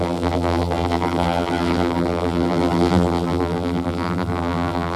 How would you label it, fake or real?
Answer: fake